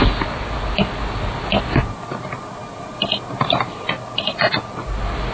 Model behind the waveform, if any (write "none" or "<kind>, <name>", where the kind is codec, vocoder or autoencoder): none